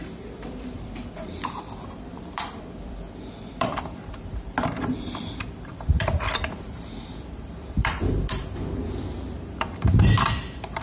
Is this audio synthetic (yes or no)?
yes